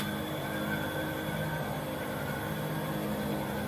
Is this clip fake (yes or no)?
no